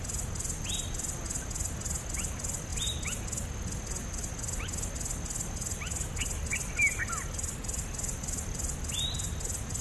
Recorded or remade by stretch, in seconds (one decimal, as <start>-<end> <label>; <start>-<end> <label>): 0.0-9.8 recorded